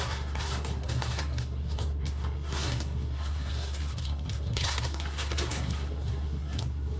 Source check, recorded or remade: remade